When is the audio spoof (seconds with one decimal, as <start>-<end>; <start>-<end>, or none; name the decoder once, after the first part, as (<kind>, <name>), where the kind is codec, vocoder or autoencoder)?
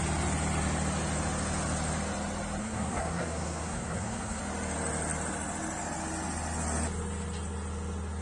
2.6-4.4 (codec, SNAC)